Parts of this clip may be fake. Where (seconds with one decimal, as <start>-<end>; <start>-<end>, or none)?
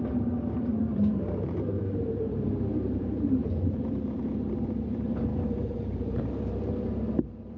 0.0-7.6